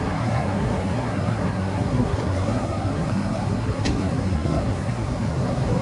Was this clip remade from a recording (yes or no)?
yes